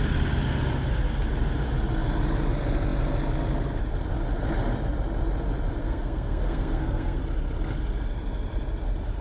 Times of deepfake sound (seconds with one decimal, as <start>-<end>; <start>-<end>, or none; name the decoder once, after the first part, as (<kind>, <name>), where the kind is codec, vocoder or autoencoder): 5.8-7.2 (codec, SNAC)